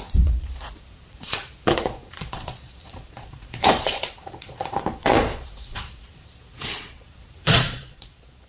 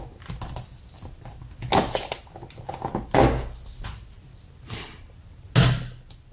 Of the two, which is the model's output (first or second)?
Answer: first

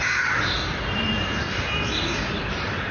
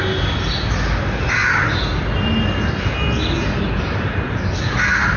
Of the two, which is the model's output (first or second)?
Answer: first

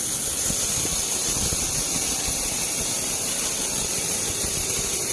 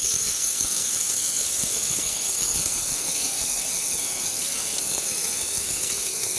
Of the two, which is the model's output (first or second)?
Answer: second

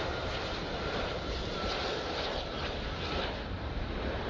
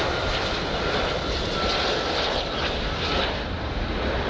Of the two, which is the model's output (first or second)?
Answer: first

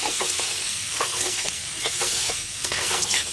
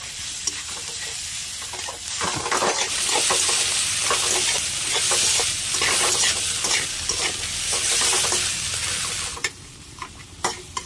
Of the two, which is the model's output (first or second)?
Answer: first